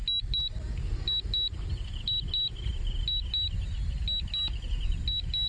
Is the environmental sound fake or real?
real